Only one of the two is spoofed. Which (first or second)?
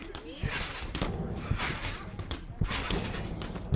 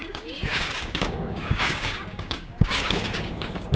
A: second